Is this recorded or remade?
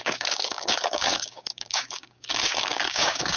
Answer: remade